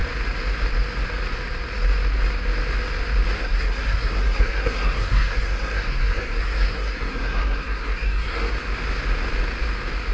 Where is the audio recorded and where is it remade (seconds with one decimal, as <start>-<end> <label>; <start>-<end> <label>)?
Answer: 0.0-3.4 recorded; 3.4-8.5 remade; 8.5-10.1 recorded